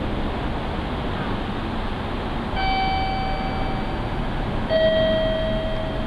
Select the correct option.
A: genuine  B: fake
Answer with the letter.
A